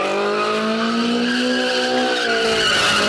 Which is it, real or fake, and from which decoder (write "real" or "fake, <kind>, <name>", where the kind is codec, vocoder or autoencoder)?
real